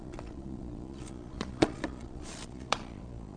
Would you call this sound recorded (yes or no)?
no